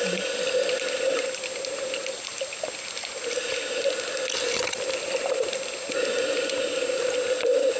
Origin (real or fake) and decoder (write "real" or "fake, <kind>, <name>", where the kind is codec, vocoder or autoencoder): real